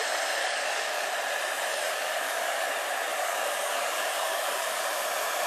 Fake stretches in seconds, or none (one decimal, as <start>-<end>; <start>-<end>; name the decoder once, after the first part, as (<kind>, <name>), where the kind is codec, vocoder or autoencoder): 0.4-1.1 (codec, DAC); 1.7-2.7; 3.1-4.8